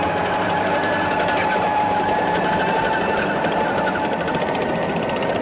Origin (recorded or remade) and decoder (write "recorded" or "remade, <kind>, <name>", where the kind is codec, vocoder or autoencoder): remade, vocoder, BigVGAN v2